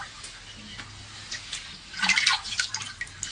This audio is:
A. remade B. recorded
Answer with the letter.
B